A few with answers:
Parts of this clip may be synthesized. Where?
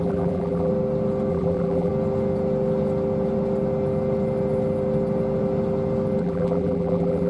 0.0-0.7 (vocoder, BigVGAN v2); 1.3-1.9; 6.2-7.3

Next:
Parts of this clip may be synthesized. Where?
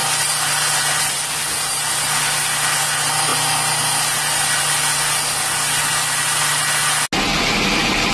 none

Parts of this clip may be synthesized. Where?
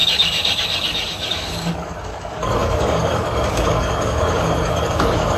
0.0-5.4 (codec, DAC)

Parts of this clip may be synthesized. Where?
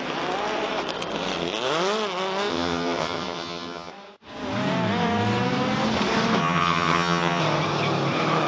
2.5-3.9 (vocoder, HiFi-GAN); 6.4-7.4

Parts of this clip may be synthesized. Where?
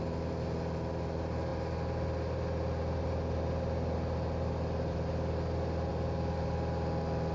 none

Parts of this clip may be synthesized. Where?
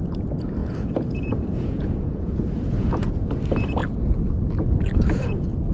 0.6-3.1 (vocoder, Vocos)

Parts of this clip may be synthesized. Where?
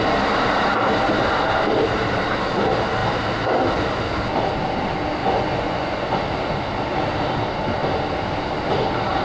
5.2-6.2 (vocoder, Vocos)